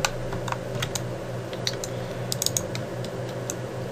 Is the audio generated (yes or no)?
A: no